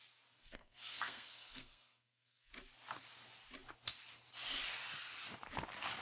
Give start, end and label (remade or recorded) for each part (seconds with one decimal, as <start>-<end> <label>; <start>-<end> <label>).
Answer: 0.0-0.4 recorded; 0.4-2.5 remade; 2.5-6.0 recorded